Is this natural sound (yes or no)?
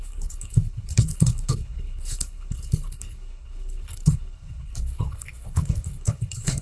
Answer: no